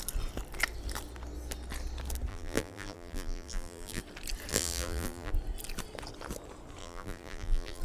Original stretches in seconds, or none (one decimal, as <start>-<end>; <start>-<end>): 0.0-2.3; 4.0-4.5; 5.3-6.8